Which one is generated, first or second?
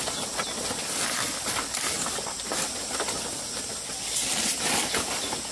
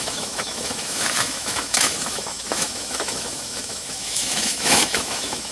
second